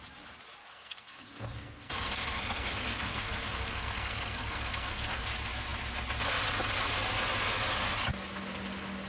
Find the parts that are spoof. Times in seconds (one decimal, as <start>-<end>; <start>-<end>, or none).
0.6-5.2